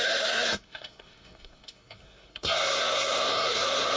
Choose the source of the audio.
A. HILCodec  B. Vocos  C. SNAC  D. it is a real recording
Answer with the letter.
C